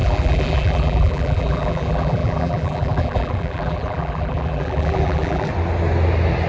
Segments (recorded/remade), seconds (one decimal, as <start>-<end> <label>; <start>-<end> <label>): 0.0-5.5 remade; 5.5-6.5 recorded